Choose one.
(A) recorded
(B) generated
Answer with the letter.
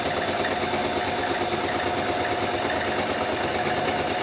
A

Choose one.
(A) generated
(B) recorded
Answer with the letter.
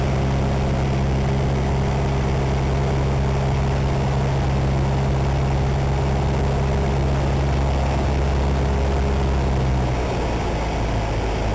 B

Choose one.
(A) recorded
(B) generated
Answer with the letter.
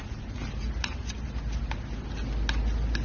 A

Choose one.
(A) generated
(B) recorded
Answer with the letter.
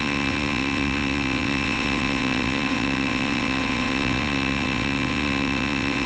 A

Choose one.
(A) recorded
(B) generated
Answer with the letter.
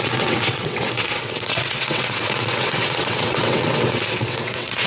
B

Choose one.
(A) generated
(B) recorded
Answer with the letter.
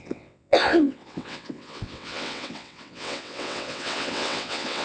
A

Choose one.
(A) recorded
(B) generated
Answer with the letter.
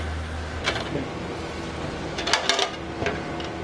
A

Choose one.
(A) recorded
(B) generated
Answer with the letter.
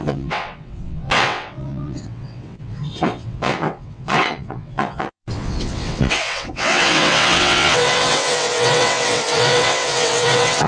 B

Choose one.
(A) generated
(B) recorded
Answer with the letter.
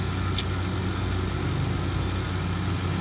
B